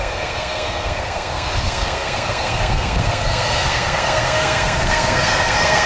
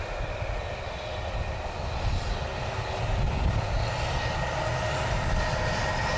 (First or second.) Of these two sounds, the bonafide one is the second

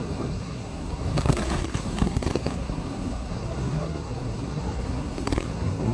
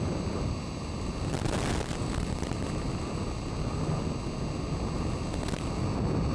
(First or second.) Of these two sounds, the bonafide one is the second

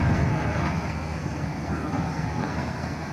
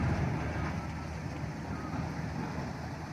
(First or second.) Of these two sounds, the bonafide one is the second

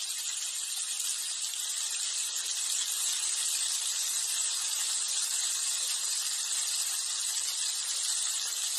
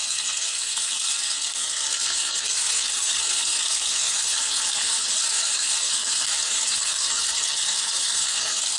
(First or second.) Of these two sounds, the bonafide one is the first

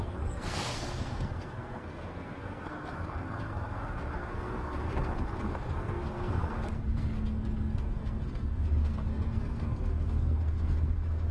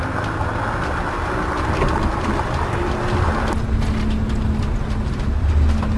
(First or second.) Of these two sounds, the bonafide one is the second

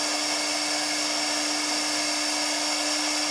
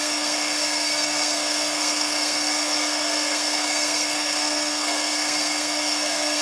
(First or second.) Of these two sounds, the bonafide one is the first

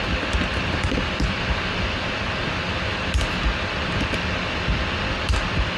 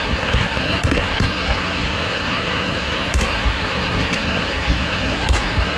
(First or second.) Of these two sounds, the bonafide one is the first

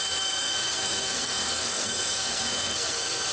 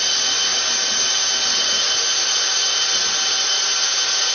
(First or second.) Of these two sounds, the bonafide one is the second